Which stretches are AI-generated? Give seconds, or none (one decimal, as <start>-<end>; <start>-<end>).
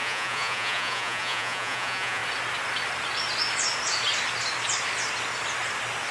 0.0-2.2